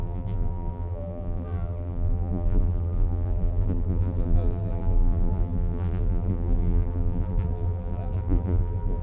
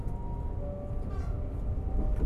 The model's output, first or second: first